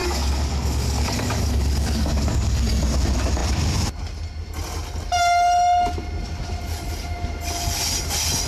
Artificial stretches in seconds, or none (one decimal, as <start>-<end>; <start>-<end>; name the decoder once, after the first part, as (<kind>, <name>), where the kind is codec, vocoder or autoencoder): 0.0-2.6 (codec, DAC)